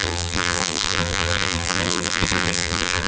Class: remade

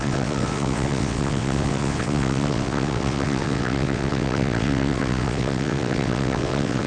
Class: remade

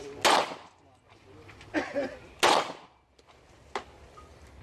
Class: recorded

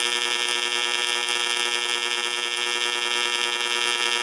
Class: recorded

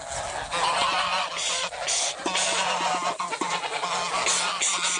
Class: recorded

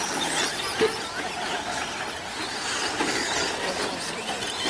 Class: recorded